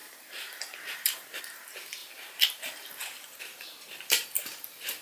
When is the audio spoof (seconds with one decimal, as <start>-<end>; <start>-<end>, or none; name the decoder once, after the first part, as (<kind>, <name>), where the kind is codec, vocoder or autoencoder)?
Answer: 0.0-5.0 (vocoder, BigVGAN v2)